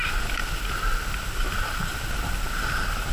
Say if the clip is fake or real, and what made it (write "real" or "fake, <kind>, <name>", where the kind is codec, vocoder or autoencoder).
real